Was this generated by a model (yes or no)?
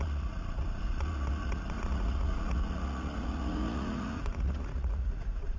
yes